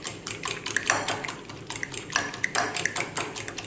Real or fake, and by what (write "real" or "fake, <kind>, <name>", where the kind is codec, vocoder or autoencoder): real